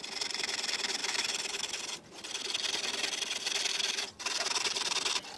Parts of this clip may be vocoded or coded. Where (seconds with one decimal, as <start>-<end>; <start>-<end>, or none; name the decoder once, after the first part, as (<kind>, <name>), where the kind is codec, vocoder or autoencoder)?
none